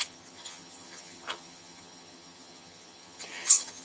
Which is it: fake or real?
fake